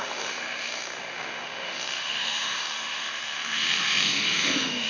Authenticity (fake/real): fake